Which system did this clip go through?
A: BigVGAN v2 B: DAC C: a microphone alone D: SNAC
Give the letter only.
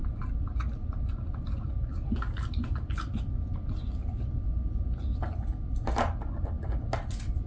C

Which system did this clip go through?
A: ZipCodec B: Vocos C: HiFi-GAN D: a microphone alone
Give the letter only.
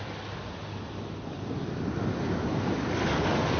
D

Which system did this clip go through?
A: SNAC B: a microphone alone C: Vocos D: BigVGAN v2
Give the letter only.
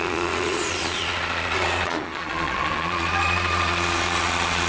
C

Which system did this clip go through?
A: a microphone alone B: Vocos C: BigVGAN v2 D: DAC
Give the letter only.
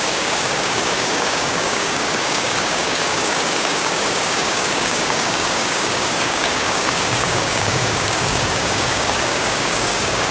D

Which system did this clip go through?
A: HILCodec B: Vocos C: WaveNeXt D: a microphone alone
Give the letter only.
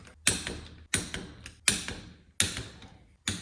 D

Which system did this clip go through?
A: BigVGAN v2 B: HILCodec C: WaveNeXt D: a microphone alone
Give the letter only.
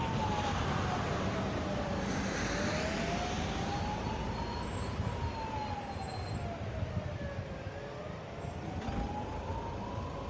D